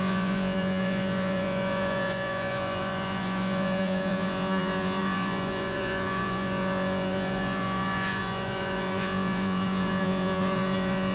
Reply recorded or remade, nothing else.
remade